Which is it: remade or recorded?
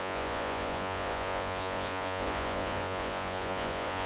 remade